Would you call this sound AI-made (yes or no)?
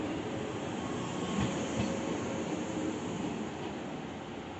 no